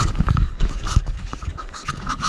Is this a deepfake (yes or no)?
yes